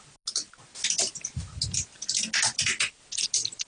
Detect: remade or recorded recorded